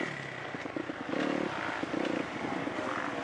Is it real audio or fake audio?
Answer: real